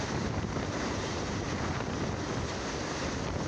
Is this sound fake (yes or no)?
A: no